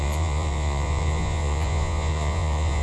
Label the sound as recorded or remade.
remade